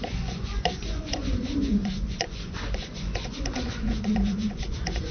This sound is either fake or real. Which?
fake